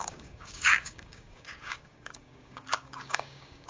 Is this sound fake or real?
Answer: fake